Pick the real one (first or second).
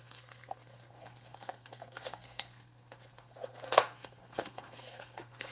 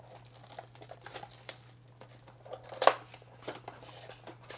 second